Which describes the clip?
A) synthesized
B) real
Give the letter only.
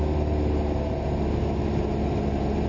B